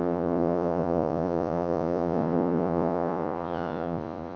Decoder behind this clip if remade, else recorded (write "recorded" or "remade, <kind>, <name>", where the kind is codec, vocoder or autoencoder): remade, vocoder, Vocos